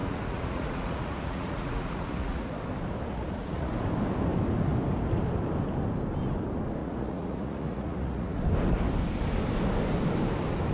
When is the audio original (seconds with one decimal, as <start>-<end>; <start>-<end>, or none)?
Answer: 2.5-3.1; 3.7-6.8; 8.4-10.7